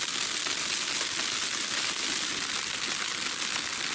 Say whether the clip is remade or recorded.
recorded